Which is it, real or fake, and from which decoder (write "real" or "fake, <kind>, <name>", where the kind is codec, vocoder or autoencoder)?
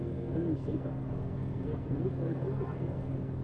fake, codec, SNAC